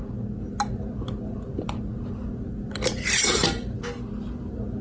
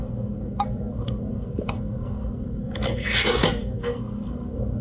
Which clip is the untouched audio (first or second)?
first